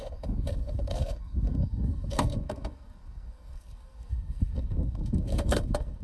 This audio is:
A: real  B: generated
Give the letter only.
B